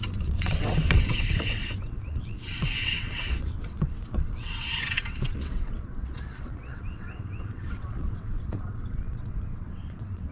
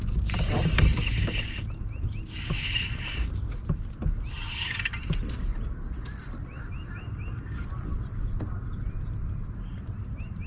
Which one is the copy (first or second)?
first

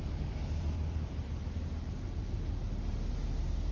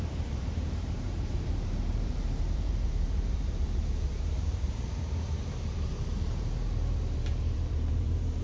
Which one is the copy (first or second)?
second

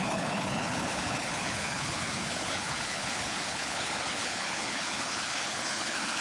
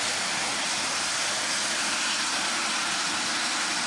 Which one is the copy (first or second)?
first